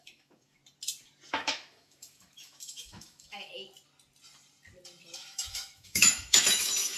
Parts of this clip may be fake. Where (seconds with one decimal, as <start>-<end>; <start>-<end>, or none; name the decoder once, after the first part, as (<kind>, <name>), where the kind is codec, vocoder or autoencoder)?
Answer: 0.0-0.6 (autoencoder, DAC-VAE); 1.3-3.5; 5.2-7.0